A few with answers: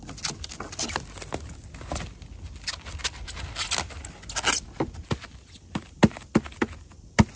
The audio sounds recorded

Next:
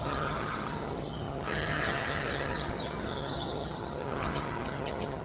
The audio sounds remade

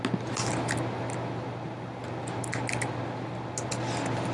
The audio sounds recorded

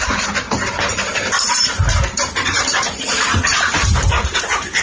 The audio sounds remade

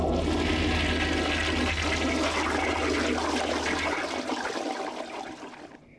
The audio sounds recorded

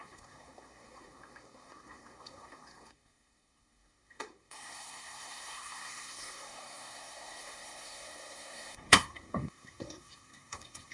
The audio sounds remade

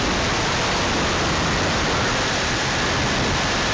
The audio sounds recorded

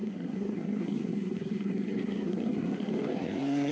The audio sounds remade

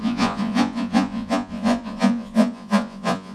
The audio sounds remade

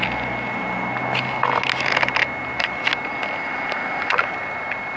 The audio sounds recorded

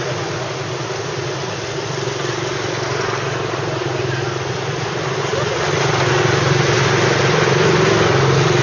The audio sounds recorded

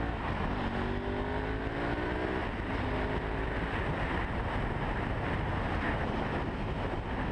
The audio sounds recorded